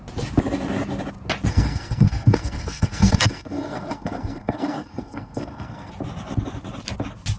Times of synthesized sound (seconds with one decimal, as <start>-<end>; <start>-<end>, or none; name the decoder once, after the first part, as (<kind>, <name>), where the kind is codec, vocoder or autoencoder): 1.5-5.9 (codec, SNAC)

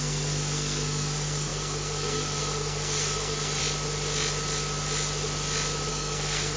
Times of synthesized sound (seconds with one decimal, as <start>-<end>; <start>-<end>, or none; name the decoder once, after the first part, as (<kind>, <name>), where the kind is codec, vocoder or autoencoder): 0.0-3.6 (codec, SNAC); 5.9-6.6

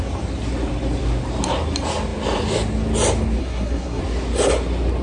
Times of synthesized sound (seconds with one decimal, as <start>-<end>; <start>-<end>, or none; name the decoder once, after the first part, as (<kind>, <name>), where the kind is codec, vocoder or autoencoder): 3.4-4.0 (codec, SNAC)

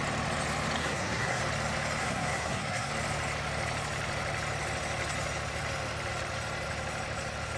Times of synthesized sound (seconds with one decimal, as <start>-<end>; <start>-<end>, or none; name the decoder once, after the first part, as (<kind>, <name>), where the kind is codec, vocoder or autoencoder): 0.8-1.4 (codec, SNAC); 2.0-2.9

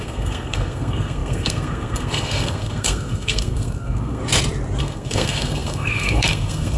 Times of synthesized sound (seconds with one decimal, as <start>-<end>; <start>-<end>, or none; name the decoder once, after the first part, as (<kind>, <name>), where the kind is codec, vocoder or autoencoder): 0.0-4.2 (codec, SNAC); 4.8-6.8

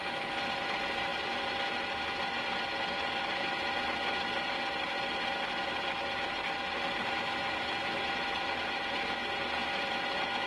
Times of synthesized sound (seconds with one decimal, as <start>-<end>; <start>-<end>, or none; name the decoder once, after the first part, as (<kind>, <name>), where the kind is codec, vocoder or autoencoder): none

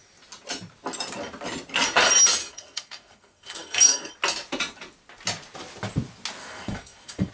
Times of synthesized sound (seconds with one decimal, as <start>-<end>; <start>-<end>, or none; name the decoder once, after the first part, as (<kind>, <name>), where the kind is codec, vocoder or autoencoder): 2.4-4.1 (codec, SNAC); 6.4-7.3